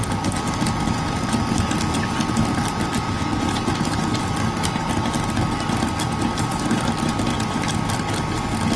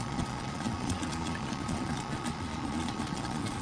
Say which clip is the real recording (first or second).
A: first